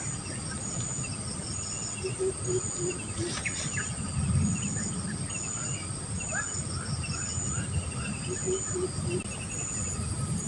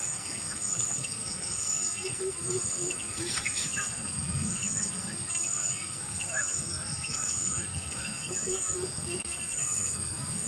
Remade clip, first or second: second